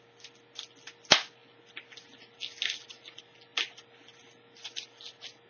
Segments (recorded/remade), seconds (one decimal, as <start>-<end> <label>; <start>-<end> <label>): 0.0-5.5 recorded